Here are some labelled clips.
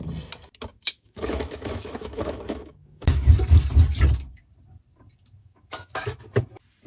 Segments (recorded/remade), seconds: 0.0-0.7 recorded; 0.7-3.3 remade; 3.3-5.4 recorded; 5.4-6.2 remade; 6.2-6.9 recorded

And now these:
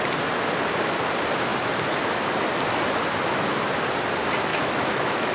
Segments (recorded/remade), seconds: 0.0-4.5 recorded; 4.5-5.3 remade

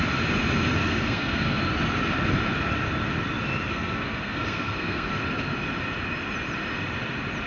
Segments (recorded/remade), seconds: 0.0-0.8 recorded; 0.8-1.6 remade; 1.6-3.7 recorded; 3.7-5.2 remade; 5.2-7.5 recorded

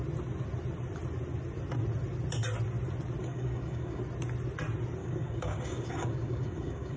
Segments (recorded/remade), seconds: 0.0-3.2 recorded; 3.2-4.0 remade; 4.0-5.0 recorded; 5.0-7.0 remade

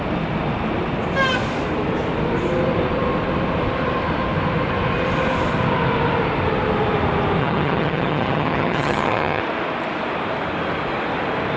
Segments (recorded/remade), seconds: 0.0-7.4 recorded; 7.4-9.4 remade; 9.4-11.6 recorded

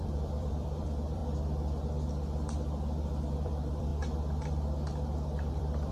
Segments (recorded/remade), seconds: 0.0-1.2 remade; 1.2-3.3 recorded; 3.3-3.9 remade; 3.9-5.5 recorded; 5.5-5.9 remade

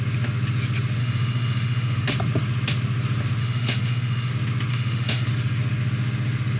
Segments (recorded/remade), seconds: 0.0-1.0 recorded; 1.0-2.1 remade; 2.1-3.4 recorded; 3.4-4.3 remade; 4.3-4.7 recorded; 4.7-5.3 remade; 5.3-6.6 recorded